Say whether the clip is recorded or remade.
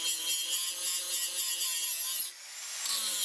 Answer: recorded